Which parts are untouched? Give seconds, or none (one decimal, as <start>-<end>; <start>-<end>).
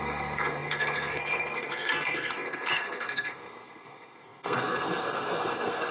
none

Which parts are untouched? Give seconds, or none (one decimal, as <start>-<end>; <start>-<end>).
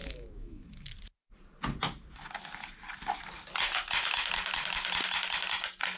0.6-6.0